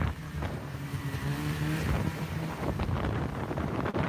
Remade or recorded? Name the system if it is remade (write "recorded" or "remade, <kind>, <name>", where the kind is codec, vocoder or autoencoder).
remade, vocoder, BigVGAN v2